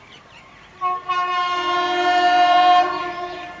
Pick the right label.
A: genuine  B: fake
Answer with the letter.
B